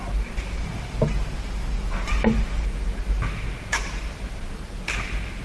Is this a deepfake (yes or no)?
yes